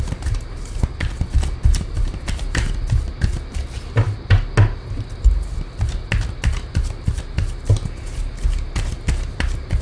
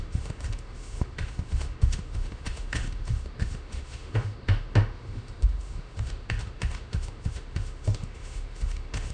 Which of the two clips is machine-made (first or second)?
second